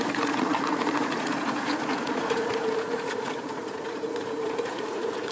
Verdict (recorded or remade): remade